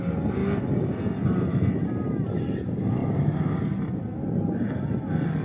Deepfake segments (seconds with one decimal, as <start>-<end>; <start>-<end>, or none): 3.0-3.8